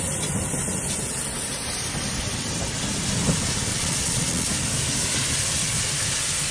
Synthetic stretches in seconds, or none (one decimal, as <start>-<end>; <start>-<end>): 3.7-4.5